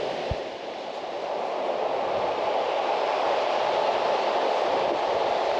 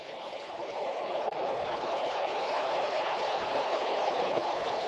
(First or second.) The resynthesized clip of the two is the second